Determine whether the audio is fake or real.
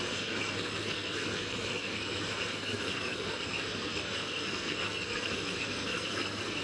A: fake